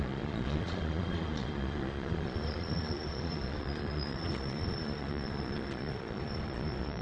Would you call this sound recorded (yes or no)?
no